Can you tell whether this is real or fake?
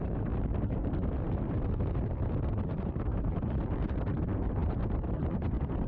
fake